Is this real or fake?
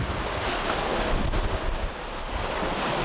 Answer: real